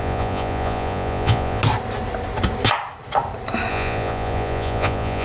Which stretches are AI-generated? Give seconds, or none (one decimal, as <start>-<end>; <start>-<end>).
0.0-1.6; 3.7-5.2

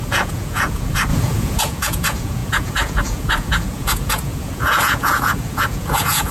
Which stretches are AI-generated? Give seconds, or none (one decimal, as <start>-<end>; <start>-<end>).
0.0-6.3

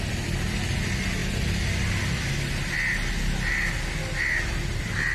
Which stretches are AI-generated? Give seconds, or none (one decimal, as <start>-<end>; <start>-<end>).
none

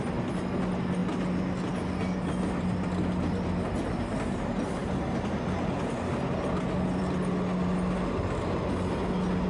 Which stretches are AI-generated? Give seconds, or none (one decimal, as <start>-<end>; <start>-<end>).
none

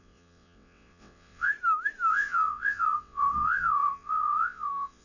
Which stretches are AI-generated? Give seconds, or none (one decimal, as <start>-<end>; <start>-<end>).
0.0-1.5; 2.1-5.0

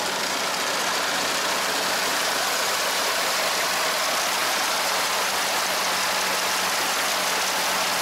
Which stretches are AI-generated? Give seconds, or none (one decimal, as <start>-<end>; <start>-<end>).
2.1-3.7; 4.4-5.3

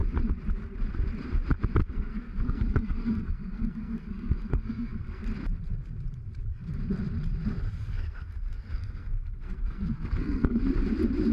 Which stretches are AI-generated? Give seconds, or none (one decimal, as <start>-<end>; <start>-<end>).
1.8-5.2; 7.8-10.6